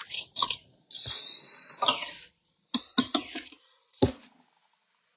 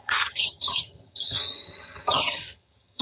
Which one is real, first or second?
first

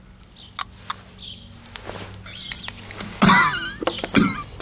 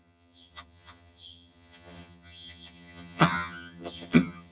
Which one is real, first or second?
first